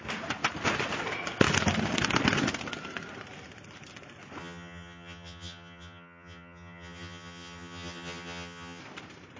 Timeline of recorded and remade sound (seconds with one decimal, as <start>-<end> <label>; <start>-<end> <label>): 0.0-4.4 recorded; 4.4-8.8 remade; 8.8-9.4 recorded